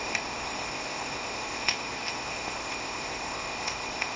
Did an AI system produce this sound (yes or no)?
yes